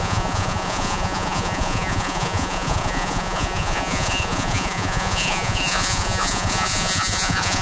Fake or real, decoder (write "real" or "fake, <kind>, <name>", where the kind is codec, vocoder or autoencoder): fake, vocoder, Vocos